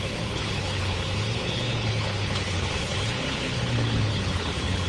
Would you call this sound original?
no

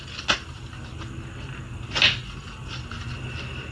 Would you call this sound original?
yes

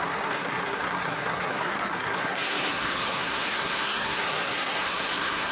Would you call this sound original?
no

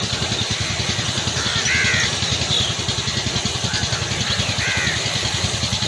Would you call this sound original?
yes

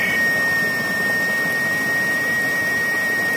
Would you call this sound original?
yes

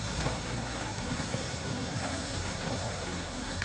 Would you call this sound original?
no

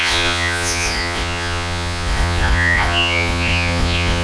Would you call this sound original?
no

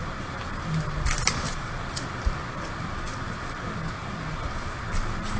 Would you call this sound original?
yes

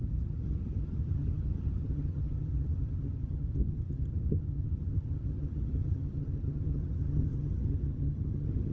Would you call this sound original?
no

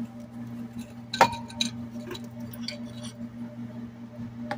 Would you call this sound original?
yes